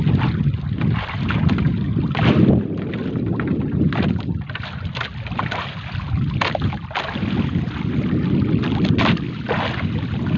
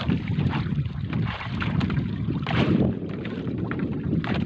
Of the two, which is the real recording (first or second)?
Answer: first